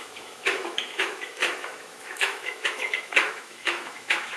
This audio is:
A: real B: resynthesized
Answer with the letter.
B